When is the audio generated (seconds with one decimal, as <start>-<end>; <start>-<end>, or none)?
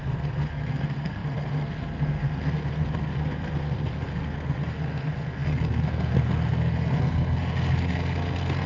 0.0-8.7